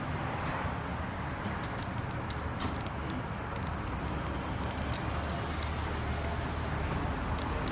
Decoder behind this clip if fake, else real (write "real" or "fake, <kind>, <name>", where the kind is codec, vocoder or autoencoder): real